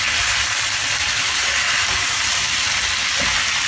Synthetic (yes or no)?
no